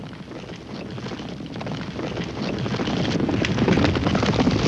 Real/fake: real